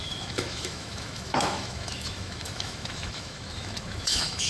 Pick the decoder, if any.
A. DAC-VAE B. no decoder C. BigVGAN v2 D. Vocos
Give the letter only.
A